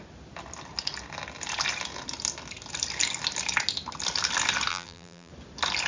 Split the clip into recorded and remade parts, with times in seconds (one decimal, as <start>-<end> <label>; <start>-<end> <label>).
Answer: 0.0-4.7 recorded; 4.7-5.3 remade; 5.3-5.9 recorded